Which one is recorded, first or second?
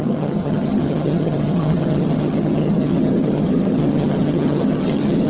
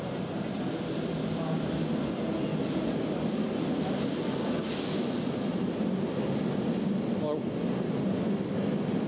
second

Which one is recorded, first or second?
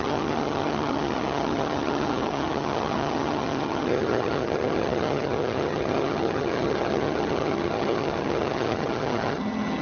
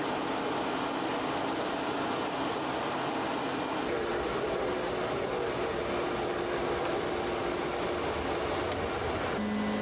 second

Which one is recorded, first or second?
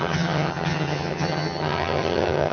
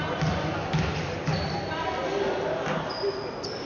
second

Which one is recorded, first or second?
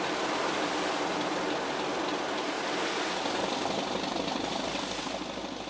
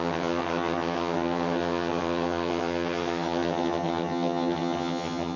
first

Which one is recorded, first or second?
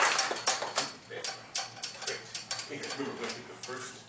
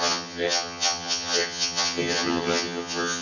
first